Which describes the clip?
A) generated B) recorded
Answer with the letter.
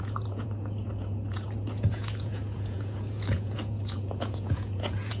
A